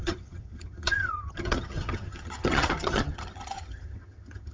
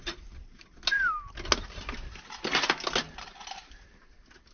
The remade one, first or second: first